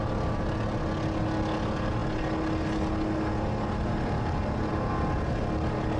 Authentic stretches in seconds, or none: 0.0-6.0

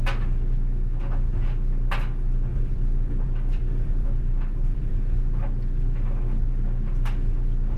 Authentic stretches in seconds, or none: 0.0-2.5; 4.9-7.8